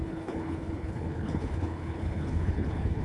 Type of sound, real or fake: fake